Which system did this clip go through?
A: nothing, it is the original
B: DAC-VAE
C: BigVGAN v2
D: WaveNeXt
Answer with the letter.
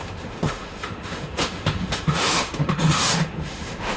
B